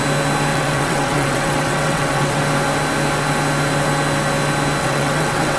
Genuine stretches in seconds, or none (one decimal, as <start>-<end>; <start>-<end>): 0.0-0.5; 2.4-4.8